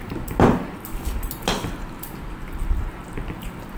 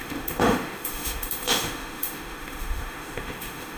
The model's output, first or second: second